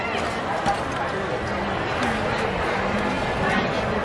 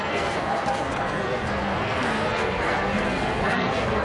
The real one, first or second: first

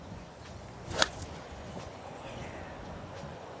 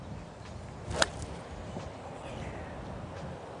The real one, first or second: second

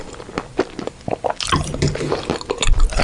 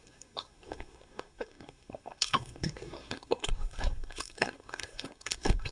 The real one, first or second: first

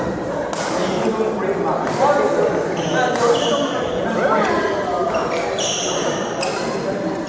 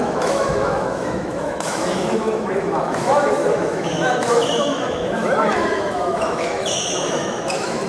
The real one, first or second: first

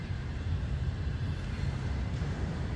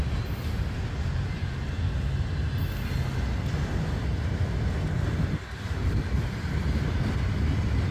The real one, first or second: second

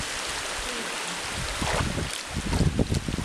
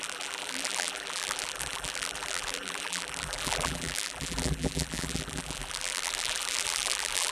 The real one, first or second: first